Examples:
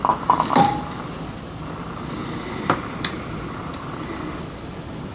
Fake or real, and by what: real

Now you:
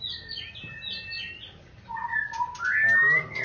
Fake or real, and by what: real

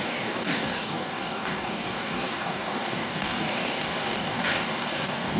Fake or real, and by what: fake, codec, DAC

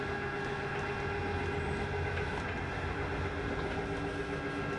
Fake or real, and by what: real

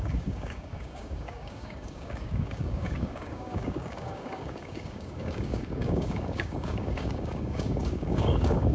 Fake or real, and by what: fake, codec, DAC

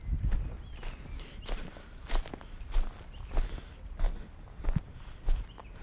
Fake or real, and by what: real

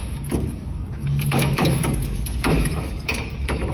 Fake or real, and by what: fake, codec, DAC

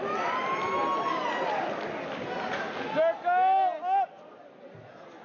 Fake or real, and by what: real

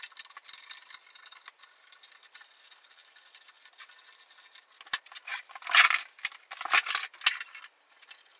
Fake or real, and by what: real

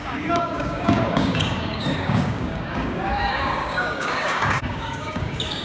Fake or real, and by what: fake, codec, DAC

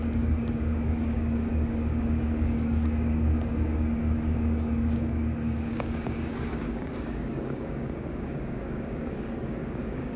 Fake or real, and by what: fake, codec, DAC